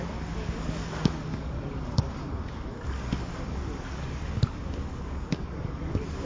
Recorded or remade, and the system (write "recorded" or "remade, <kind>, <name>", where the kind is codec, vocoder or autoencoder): remade, codec, DAC